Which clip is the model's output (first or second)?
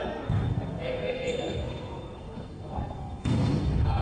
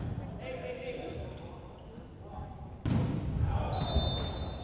first